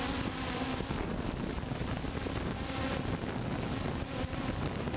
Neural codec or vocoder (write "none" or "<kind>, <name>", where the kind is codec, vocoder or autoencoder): none